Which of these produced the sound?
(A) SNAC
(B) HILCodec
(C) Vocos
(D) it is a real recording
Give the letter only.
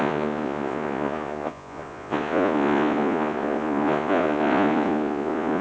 C